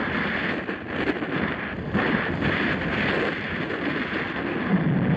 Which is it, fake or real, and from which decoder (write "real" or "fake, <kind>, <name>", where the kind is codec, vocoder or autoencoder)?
real